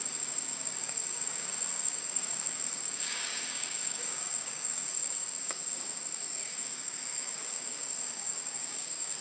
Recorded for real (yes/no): no